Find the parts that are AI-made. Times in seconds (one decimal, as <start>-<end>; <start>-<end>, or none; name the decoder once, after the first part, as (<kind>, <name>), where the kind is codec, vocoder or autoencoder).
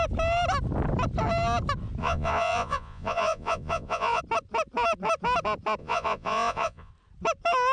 2.0-4.2 (vocoder, Vocos); 5.8-6.9